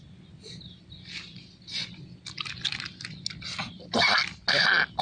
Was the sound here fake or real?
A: real